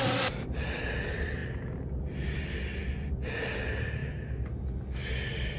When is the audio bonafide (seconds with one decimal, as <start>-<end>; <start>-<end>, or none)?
0.0-5.6